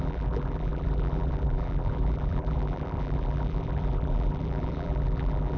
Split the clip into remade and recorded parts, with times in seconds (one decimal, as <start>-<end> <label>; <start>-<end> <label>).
0.0-5.6 remade